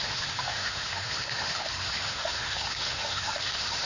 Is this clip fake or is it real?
fake